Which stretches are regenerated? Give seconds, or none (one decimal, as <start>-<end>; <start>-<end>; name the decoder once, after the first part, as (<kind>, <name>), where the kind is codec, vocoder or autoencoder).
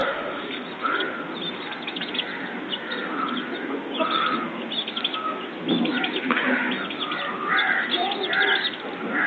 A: 0.0-0.5 (autoencoder, DAC-VAE)